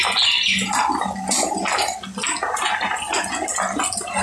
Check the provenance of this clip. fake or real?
real